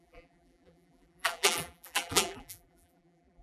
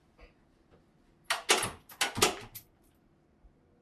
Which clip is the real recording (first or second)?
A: second